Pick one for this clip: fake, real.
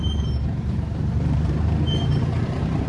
fake